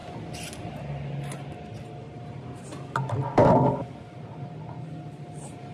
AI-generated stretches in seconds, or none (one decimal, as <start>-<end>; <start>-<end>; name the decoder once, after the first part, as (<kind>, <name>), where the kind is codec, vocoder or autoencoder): none